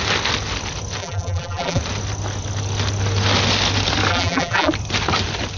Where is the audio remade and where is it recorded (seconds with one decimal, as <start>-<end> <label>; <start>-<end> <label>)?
0.0-1.0 recorded; 1.0-1.8 remade; 1.8-4.1 recorded; 4.1-4.7 remade; 4.7-5.6 recorded